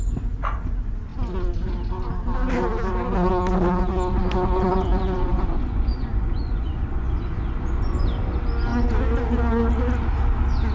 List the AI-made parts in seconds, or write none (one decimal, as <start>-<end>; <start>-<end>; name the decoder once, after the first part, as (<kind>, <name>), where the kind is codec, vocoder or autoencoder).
3.9-8.0 (vocoder, Vocos)